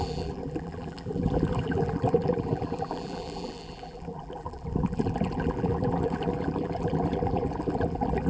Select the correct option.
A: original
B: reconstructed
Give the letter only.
B